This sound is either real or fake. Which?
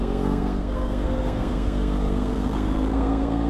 fake